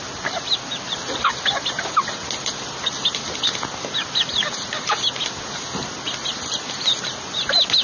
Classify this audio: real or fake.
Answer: real